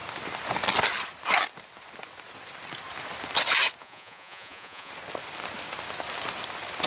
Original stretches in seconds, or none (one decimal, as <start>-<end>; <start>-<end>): 0.0-3.8; 4.9-6.9